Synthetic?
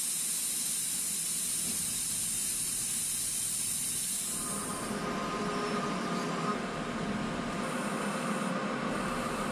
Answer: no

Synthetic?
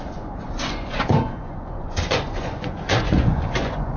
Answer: yes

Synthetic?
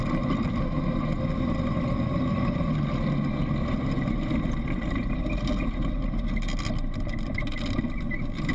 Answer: no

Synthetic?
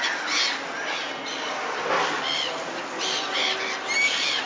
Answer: no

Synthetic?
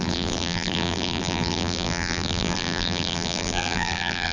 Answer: yes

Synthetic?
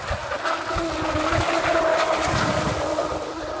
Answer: no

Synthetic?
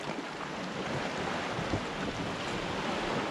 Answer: no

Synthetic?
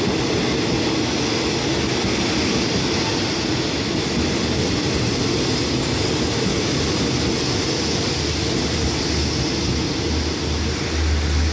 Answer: no